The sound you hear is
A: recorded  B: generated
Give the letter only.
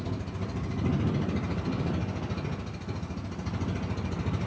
A